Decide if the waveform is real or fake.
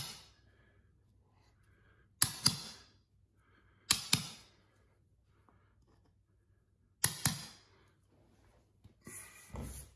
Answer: real